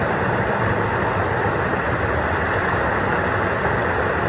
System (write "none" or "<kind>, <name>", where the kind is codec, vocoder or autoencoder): none